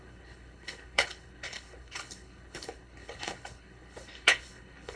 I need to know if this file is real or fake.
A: fake